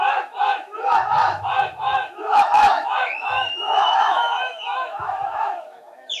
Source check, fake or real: fake